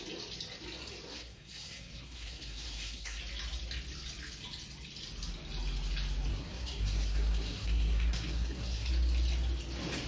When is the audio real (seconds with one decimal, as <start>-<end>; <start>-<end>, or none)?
0.0-1.1; 3.2-6.3; 8.9-10.1